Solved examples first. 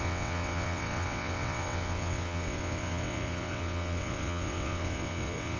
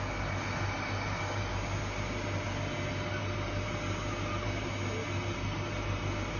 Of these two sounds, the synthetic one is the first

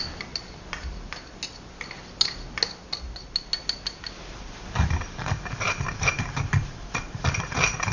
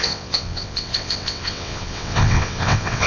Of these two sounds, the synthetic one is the second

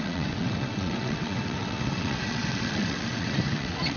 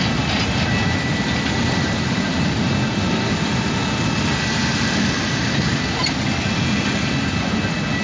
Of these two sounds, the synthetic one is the first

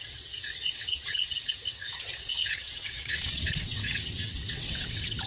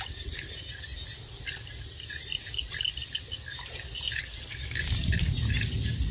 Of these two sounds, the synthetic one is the first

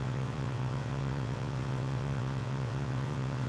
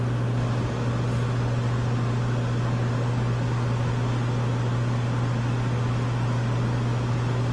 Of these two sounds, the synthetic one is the first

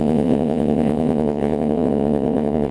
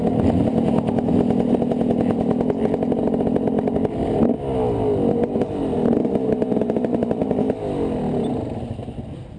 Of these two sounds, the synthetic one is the first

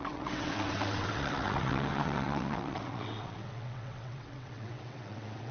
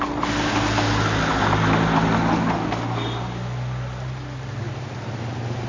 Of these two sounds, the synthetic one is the first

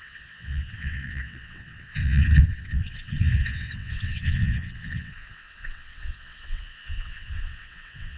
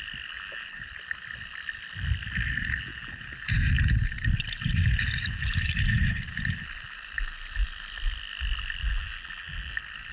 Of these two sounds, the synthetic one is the first